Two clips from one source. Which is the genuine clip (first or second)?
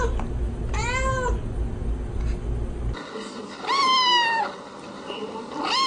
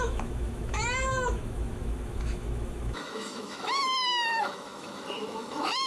first